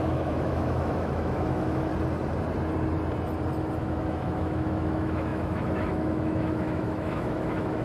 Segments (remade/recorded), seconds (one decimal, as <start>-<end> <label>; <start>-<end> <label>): 0.0-1.9 remade; 1.9-3.8 recorded; 3.8-7.8 remade